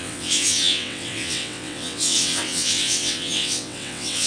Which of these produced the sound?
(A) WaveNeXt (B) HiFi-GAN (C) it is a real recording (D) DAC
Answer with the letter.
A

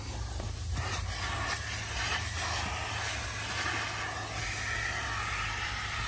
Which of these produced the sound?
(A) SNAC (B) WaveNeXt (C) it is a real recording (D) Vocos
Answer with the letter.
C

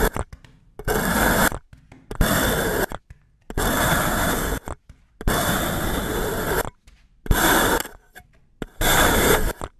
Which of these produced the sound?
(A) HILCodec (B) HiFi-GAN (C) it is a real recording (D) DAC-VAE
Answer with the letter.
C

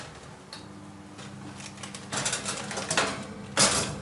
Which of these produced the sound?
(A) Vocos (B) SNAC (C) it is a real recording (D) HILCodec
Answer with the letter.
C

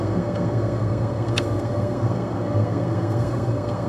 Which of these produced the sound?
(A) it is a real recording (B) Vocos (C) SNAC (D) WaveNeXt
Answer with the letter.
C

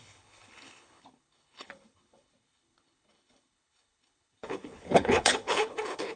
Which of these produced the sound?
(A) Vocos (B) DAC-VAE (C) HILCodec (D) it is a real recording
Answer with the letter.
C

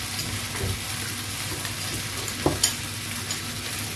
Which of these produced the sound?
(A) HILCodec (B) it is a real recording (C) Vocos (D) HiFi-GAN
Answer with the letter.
B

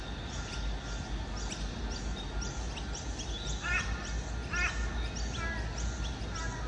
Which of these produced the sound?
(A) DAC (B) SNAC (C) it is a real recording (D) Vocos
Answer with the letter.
C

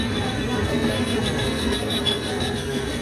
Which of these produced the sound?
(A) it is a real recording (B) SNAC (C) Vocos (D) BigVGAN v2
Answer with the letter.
B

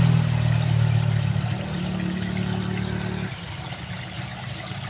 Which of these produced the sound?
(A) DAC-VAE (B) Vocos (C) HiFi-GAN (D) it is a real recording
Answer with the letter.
D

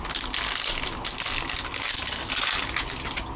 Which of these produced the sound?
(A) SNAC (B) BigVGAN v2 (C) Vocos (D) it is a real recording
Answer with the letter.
D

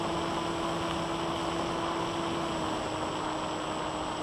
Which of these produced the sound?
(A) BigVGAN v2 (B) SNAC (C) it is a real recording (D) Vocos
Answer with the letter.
C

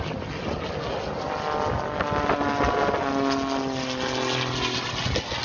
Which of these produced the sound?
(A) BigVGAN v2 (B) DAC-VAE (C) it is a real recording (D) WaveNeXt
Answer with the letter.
C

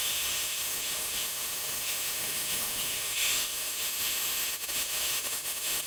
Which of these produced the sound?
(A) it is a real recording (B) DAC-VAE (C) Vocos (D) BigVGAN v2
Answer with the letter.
B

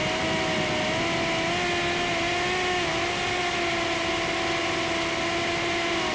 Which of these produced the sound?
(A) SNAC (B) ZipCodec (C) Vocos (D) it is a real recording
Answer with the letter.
D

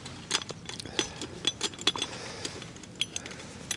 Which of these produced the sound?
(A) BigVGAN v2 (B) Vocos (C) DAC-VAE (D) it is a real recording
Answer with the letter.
D